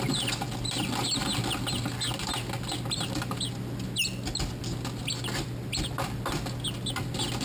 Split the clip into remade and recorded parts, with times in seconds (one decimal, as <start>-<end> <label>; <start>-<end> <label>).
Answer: 0.0-7.4 recorded